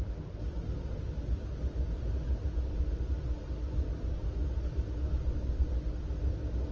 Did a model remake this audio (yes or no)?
no